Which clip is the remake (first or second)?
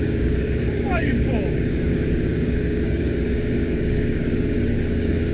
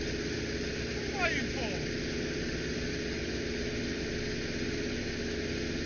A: first